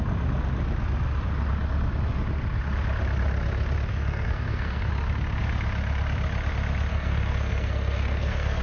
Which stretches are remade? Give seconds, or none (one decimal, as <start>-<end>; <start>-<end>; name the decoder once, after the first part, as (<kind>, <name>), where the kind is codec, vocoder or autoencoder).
3.9-4.9 (codec, SNAC); 6.9-8.6